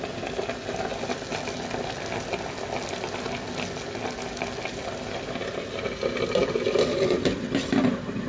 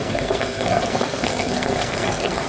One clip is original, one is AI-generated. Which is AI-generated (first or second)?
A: second